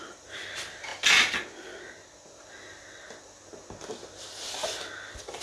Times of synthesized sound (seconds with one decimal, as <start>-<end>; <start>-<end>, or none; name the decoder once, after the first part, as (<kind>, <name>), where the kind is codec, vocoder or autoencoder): none